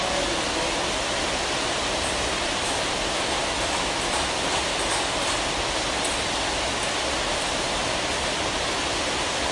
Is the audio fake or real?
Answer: real